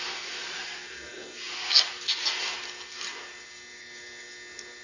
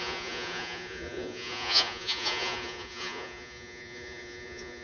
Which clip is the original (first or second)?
first